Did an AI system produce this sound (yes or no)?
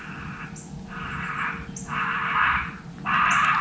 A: no